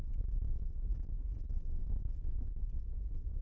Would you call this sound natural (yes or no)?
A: yes